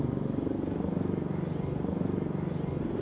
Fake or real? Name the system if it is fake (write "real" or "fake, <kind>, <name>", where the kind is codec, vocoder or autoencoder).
real